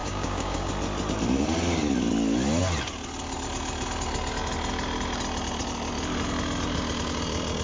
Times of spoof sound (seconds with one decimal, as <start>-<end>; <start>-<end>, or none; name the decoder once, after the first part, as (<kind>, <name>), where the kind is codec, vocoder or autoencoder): 0.0-0.7 (codec, DAC)